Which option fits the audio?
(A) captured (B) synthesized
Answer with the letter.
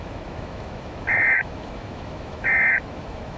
B